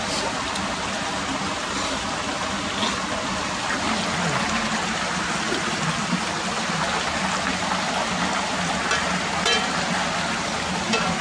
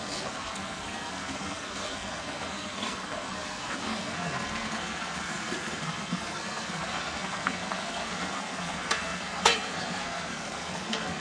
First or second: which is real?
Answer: first